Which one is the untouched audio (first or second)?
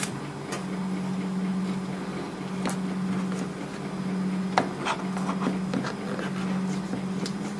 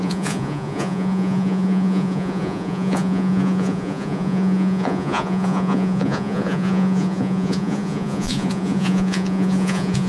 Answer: first